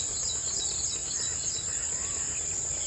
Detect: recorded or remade recorded